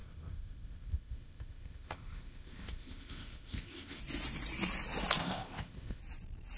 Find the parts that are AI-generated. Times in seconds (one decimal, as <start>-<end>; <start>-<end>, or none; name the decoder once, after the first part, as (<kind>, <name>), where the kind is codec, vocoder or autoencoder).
0.0-4.0 (codec, ZipCodec); 5.2-6.0